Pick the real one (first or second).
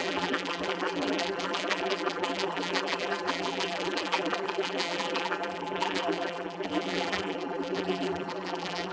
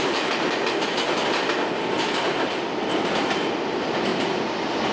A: second